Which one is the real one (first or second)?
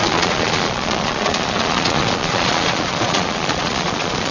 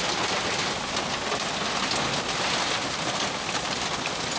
second